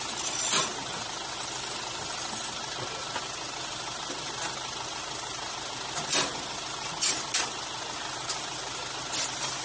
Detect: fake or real real